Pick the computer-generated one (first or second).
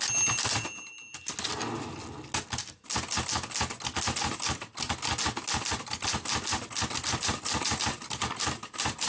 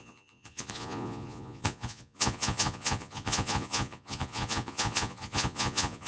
second